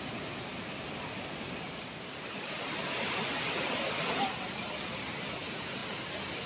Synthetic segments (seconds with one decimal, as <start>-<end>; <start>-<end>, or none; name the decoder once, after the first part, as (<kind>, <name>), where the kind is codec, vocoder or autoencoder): none